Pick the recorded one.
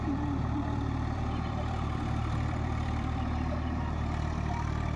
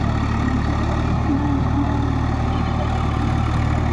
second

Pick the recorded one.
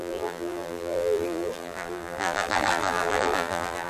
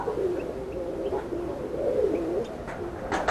second